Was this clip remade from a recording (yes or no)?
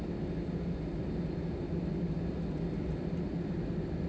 no